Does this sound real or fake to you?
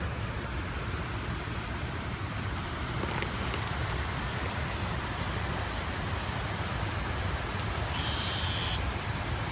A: fake